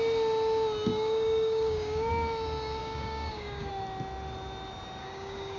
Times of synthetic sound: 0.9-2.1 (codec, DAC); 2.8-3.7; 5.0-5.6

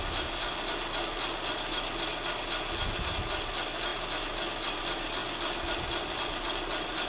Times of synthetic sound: none